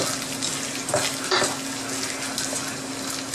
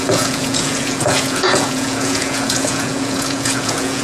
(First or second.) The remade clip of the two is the second